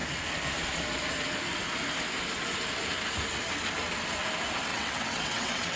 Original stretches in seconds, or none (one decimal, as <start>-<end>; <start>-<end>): 0.0-4.7